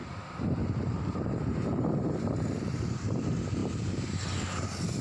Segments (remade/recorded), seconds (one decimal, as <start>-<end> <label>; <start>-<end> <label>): 0.0-3.0 remade; 3.0-3.6 recorded; 3.6-4.2 remade; 4.2-5.0 recorded